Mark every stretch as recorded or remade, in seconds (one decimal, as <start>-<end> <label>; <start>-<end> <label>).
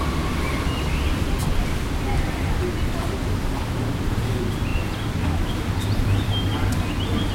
0.0-7.3 recorded